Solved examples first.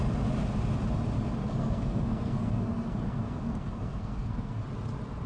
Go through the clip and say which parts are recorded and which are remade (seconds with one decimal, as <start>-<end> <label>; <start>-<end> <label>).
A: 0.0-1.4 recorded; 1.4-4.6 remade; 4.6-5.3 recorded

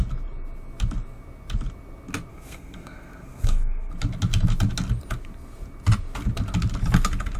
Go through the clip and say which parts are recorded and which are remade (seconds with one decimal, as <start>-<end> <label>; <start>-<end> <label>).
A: 0.0-2.3 recorded; 2.3-3.9 remade; 3.9-7.4 recorded

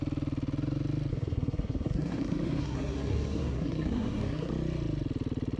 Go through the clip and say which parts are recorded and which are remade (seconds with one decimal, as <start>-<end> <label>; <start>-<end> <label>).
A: 0.0-1.1 recorded; 1.1-4.5 remade; 4.5-5.6 recorded

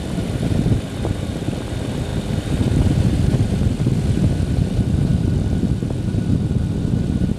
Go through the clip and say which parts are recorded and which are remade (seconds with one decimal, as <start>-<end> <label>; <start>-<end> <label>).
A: 0.0-7.4 recorded

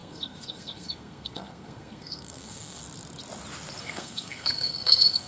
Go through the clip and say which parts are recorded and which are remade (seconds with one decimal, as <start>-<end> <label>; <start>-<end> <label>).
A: 0.0-2.8 remade; 2.8-3.8 recorded; 3.8-5.3 remade